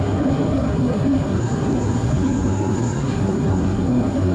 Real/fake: fake